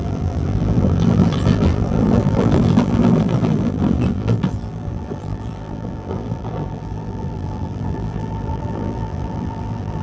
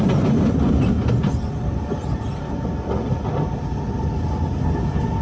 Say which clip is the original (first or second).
second